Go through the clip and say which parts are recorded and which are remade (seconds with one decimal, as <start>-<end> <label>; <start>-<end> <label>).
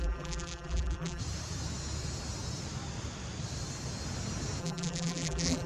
0.0-1.2 remade; 1.2-4.6 recorded; 4.6-5.7 remade